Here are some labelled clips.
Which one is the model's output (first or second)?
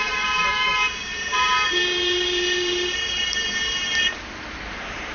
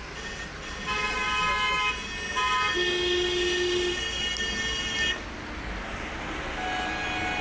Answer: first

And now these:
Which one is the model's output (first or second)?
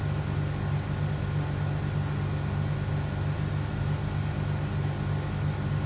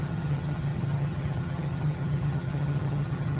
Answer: second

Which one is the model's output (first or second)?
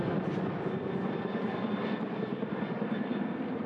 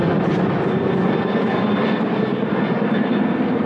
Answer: first